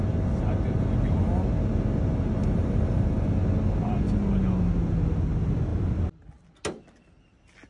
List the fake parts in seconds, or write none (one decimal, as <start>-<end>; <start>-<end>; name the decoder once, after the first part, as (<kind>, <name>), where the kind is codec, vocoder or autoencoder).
2.4-3.3 (vocoder, BigVGAN v2)